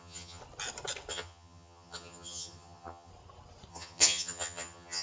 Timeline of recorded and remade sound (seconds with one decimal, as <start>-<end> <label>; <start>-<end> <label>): 0.0-0.4 remade; 0.4-1.1 recorded; 1.1-3.1 remade; 3.1-3.7 recorded; 3.7-5.0 remade